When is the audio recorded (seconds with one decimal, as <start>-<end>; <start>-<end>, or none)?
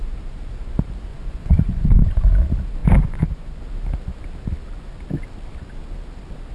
0.0-1.1; 2.3-2.8; 3.6-6.5